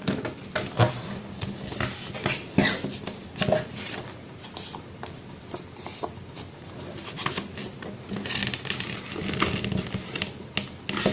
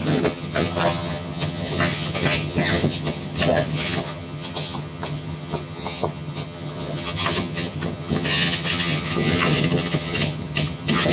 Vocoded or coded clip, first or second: second